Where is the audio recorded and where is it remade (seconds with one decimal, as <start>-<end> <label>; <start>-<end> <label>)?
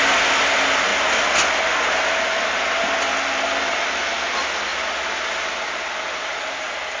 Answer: 0.0-7.0 recorded